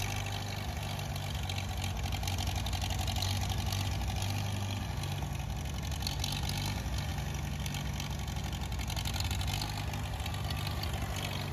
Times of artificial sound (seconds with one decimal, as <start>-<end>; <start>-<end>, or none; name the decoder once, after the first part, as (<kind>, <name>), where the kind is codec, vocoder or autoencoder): none